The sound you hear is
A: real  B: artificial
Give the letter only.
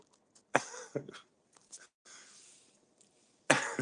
A